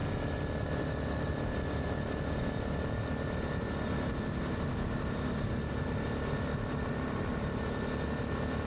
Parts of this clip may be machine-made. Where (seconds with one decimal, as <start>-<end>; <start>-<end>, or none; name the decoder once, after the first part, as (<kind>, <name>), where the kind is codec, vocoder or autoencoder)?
none